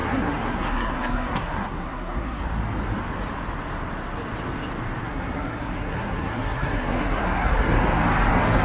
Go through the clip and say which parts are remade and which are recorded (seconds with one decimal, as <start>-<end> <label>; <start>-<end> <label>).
0.0-2.4 remade; 2.4-5.0 recorded; 5.0-7.5 remade; 7.5-8.6 recorded